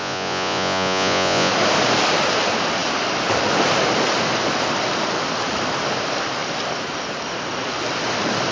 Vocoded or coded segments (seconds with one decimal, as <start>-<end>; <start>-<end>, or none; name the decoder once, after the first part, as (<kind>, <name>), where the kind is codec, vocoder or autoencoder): 0.0-1.5 (vocoder, Vocos)